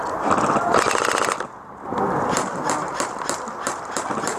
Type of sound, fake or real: real